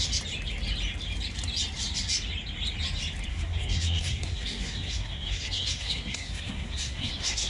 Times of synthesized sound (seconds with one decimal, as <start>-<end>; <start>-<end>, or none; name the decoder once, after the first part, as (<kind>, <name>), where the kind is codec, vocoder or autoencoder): 3.3-7.5 (codec, SNAC)

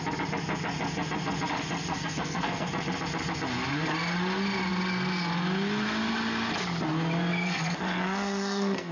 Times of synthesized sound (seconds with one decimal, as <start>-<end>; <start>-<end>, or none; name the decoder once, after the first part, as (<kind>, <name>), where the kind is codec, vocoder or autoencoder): 1.9-2.7 (codec, SNAC); 7.3-8.9

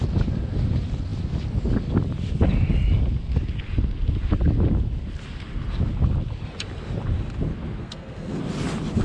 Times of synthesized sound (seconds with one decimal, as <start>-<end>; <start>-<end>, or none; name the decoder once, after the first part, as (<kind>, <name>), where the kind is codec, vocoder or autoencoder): 7.8-8.4 (codec, SNAC)

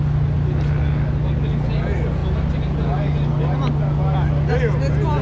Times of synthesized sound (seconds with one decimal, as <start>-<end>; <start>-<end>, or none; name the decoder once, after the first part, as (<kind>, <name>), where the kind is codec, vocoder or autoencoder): none